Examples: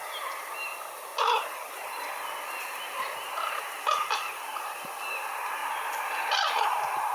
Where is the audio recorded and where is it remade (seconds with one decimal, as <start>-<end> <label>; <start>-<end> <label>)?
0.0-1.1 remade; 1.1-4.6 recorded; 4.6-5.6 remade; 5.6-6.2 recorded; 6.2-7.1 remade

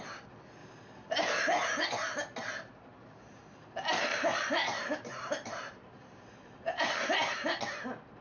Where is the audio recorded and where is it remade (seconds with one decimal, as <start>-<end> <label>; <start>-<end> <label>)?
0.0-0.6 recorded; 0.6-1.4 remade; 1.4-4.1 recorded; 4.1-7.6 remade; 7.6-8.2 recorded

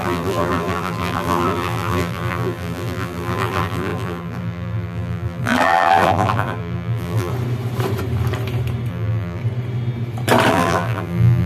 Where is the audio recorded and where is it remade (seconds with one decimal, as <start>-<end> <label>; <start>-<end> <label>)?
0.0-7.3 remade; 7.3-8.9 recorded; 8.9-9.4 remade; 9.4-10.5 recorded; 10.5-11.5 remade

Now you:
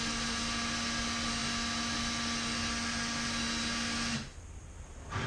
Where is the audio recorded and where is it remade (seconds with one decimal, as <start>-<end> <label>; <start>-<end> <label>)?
0.0-5.3 recorded

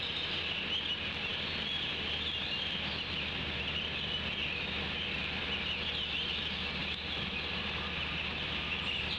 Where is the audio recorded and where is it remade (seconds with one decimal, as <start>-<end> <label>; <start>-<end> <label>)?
0.0-6.8 recorded; 6.8-9.2 remade

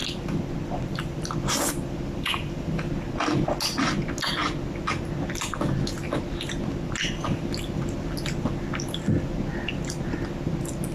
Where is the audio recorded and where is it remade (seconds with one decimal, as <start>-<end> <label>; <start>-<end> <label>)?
0.0-2.9 remade; 2.9-10.9 recorded

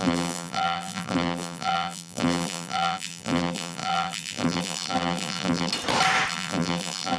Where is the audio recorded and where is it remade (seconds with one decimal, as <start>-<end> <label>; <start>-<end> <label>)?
0.0-5.7 remade; 5.7-6.3 recorded; 6.3-7.2 remade

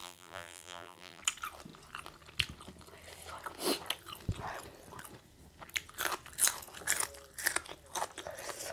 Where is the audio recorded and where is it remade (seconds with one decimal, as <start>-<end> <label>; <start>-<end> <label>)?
0.0-1.2 remade; 1.2-8.7 recorded